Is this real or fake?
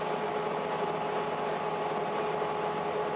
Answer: real